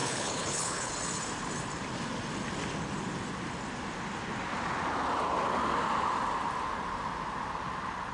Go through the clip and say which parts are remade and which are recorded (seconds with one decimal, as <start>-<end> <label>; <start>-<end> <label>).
0.0-0.9 remade; 0.9-8.1 recorded